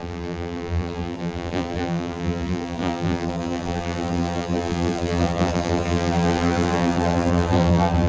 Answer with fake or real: fake